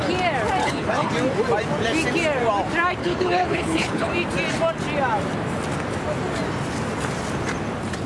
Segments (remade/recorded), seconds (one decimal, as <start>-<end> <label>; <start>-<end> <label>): 0.0-0.6 recorded; 0.6-1.1 remade; 1.1-3.0 recorded; 3.0-4.1 remade; 4.1-8.1 recorded